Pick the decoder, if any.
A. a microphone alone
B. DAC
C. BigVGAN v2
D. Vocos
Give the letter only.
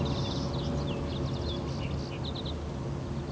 A